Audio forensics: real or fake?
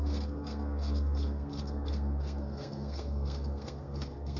fake